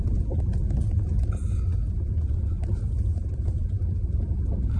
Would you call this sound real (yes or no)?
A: yes